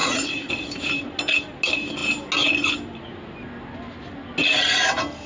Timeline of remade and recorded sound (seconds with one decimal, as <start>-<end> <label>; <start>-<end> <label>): 0.0-0.5 remade; 0.5-5.3 recorded